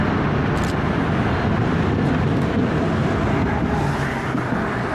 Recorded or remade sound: recorded